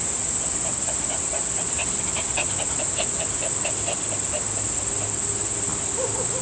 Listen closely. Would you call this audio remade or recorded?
recorded